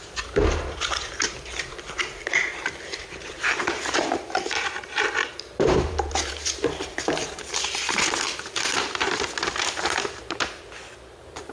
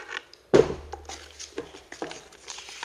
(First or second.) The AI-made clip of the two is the first